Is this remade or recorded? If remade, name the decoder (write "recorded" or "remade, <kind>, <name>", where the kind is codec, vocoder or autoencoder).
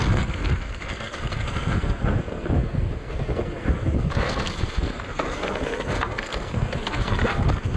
remade, codec, SNAC